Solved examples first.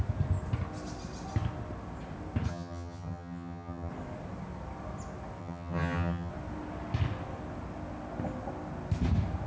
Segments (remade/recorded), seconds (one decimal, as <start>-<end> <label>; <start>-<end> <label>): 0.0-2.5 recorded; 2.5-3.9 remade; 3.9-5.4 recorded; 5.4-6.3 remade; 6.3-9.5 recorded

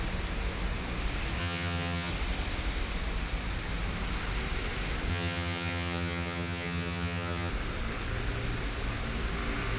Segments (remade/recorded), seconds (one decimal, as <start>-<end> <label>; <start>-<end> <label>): 0.0-1.4 recorded; 1.4-2.1 remade; 2.1-5.1 recorded; 5.1-7.5 remade; 7.5-9.8 recorded

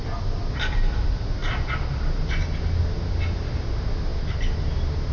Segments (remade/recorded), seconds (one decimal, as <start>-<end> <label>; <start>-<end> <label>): 0.0-5.1 recorded